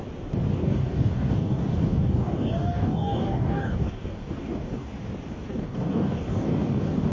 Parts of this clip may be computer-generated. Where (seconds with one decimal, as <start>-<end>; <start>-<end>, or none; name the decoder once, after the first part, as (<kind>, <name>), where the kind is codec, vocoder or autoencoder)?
0.6-4.9 (codec, DAC); 5.5-7.1